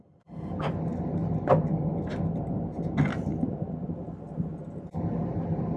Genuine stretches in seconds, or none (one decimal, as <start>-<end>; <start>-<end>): 0.0-5.8